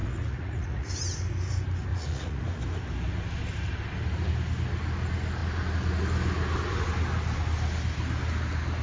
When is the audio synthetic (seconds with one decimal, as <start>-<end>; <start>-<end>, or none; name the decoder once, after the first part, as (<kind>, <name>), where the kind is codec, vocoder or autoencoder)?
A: 0.0-0.9 (vocoder, Vocos); 1.9-2.4